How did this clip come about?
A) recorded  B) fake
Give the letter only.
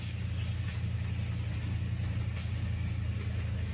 A